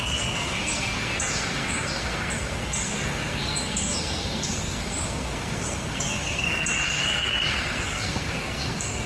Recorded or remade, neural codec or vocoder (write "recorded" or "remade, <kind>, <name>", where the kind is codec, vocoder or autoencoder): remade, codec, SNAC